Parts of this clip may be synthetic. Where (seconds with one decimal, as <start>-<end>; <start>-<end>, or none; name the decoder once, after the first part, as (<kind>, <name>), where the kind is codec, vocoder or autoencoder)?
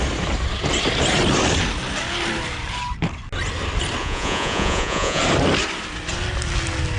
4.0-5.2 (vocoder, Vocos)